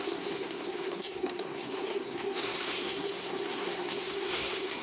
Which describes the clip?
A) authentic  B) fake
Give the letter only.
B